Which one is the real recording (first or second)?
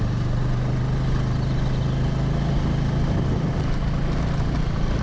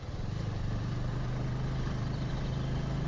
first